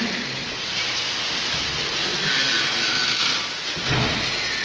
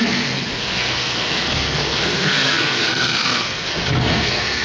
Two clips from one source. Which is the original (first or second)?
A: first